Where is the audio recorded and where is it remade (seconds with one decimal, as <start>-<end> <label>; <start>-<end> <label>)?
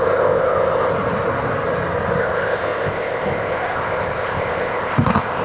0.0-0.9 remade; 0.9-2.2 recorded; 2.2-5.4 remade